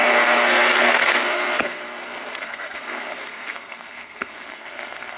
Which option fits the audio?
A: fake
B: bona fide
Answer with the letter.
A